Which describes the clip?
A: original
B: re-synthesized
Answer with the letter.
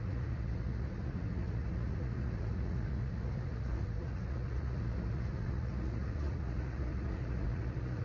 B